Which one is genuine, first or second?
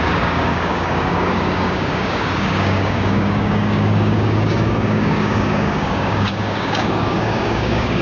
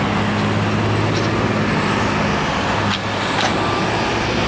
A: second